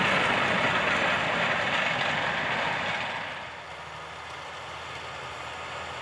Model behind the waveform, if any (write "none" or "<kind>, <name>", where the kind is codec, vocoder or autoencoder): none